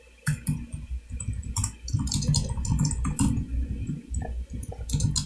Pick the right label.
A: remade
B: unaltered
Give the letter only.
B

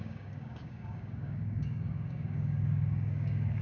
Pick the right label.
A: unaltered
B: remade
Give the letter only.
B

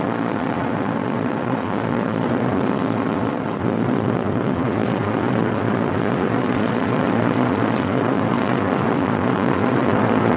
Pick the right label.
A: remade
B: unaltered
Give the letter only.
A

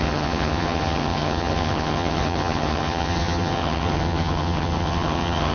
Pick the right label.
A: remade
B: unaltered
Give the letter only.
A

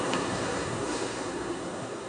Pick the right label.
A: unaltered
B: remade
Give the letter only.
B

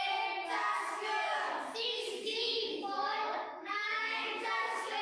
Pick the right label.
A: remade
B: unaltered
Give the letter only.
A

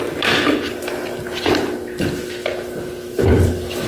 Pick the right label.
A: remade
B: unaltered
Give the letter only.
B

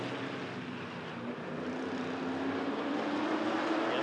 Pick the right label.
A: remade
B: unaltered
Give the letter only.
B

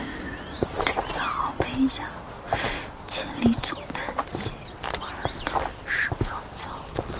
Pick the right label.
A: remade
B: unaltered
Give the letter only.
B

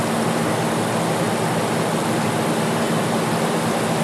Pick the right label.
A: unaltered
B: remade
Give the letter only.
A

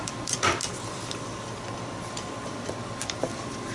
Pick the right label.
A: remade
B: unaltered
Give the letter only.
A